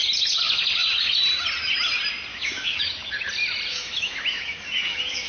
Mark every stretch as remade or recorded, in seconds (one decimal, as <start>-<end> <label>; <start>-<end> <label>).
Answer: 0.0-2.3 recorded; 2.3-3.1 remade; 3.1-3.7 recorded; 3.7-5.3 remade